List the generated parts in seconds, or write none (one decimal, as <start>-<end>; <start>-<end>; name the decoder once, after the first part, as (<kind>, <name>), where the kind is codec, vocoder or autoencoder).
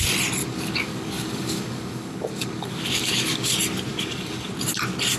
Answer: 0.4-3.5 (codec, DAC); 3.9-4.5